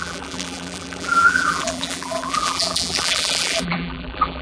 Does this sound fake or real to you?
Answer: fake